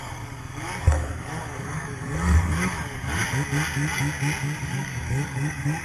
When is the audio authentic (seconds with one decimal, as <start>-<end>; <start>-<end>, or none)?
3.2-4.6